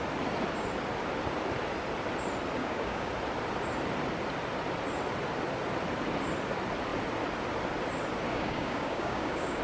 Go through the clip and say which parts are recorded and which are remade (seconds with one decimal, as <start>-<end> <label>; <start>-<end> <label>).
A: 0.0-2.6 recorded; 2.6-3.1 remade; 3.1-8.3 recorded; 8.3-9.6 remade